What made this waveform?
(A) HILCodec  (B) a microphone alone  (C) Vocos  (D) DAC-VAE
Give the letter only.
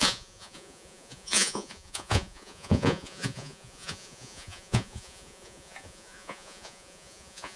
C